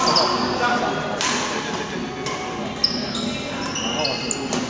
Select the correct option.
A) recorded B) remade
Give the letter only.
A